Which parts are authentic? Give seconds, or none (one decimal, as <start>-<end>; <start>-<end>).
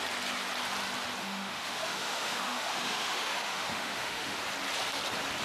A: 0.0-1.2; 4.4-5.4